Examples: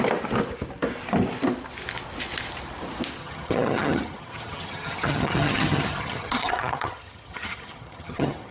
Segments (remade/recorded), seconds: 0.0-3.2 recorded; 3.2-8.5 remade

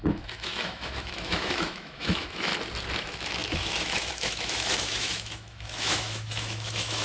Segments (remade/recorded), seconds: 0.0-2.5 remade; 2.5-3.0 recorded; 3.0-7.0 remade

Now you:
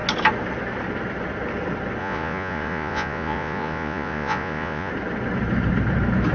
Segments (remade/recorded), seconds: 0.0-2.0 recorded; 2.0-4.9 remade; 4.9-6.3 recorded

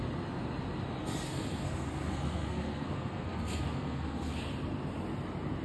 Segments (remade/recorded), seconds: 0.0-1.0 recorded; 1.0-4.4 remade; 4.4-5.6 recorded

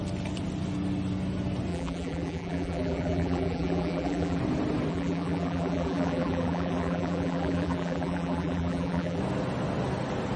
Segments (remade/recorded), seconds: 0.0-1.7 recorded; 1.7-4.4 remade; 4.4-4.9 recorded; 4.9-9.2 remade; 9.2-10.4 recorded

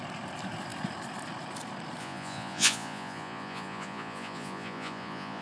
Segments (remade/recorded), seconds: 0.0-2.0 recorded; 2.0-5.4 remade